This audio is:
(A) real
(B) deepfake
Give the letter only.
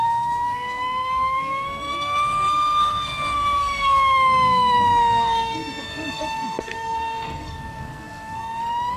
B